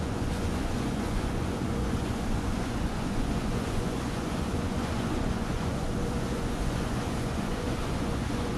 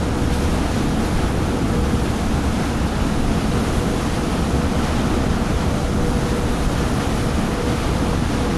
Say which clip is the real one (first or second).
second